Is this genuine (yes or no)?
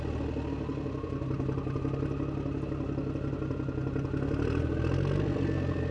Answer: yes